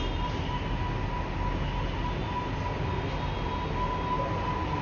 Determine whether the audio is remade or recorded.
recorded